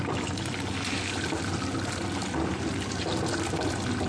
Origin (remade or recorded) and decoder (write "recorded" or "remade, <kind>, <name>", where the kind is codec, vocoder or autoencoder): recorded